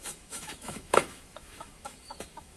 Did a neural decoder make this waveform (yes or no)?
yes